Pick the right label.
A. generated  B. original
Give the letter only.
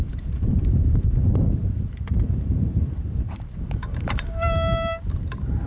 A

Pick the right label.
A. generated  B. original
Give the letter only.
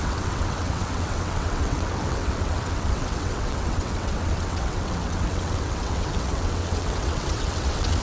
A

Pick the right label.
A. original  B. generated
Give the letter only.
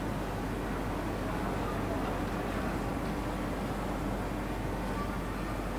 A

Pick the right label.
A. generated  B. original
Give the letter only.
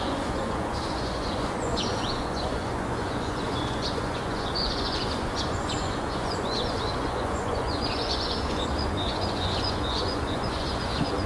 A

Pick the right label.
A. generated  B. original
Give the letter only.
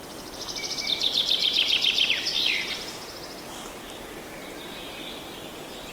B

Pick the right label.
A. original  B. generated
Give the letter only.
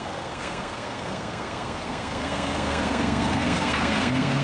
B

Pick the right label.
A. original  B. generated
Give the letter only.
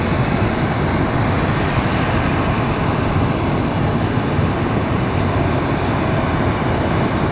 A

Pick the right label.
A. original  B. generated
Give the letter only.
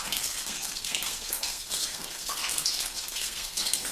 B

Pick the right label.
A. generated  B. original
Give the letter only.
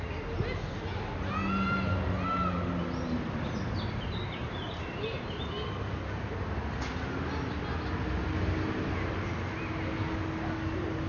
B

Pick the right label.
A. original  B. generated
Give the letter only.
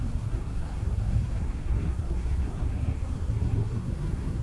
B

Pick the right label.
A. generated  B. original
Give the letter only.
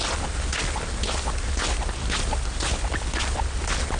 B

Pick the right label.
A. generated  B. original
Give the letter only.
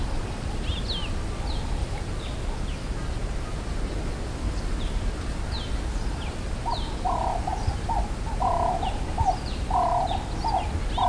B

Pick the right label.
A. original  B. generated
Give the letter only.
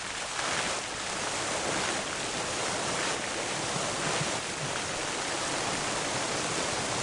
A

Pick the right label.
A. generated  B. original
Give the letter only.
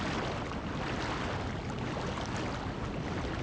B